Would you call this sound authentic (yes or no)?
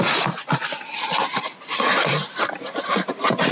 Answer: no